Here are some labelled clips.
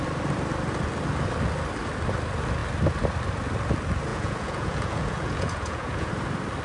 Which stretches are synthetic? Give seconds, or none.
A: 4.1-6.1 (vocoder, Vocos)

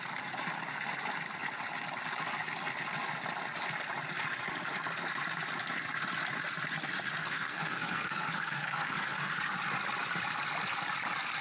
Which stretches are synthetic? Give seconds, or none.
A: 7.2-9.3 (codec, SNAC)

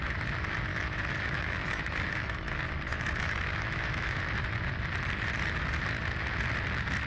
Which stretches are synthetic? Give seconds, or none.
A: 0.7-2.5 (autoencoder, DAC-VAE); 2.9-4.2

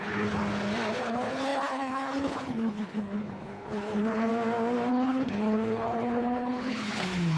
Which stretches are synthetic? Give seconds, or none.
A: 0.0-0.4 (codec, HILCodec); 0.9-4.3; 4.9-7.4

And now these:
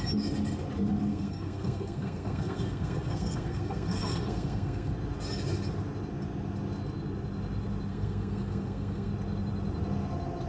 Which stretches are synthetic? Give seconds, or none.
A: 1.1-4.9 (codec, SNAC); 7.9-9.1

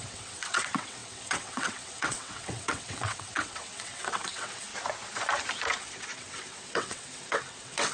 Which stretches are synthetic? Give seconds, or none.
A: 0.0-4.7 (vocoder, WaveNeXt); 5.8-7.9